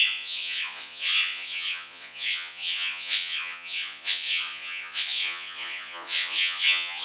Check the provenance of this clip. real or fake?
fake